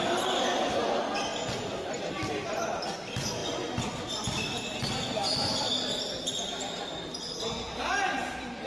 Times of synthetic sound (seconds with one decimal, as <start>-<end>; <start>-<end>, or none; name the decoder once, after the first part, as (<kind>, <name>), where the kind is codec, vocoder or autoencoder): none